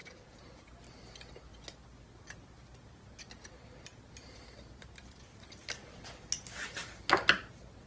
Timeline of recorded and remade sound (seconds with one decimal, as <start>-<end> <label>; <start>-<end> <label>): 0.0-0.6 remade; 0.6-7.9 recorded